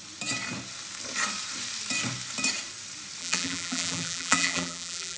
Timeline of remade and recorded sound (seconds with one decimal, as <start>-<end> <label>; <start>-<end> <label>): 0.0-3.2 recorded; 3.2-5.2 remade